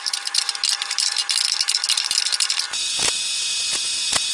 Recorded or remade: recorded